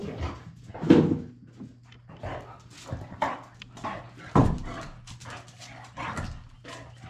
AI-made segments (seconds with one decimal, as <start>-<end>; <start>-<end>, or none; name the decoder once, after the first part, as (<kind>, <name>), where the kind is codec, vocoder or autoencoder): none